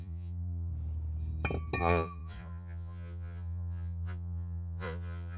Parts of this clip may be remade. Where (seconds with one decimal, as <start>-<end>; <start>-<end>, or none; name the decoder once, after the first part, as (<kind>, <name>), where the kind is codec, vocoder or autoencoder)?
0.0-0.7 (vocoder, Vocos); 1.8-5.4